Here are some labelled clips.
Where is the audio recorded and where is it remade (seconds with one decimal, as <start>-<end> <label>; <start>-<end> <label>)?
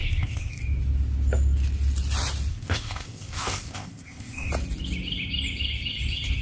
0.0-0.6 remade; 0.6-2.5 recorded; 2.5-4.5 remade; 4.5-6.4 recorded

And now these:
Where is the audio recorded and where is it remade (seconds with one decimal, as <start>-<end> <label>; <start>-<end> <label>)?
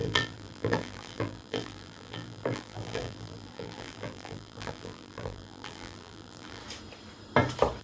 0.0-6.6 remade; 6.6-7.8 recorded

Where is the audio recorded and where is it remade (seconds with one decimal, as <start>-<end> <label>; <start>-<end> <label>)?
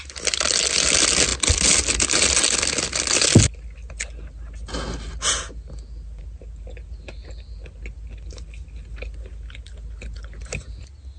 0.0-11.2 recorded